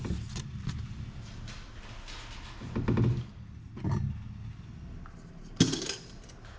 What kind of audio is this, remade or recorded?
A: recorded